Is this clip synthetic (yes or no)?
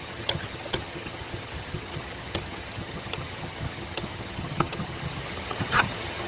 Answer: yes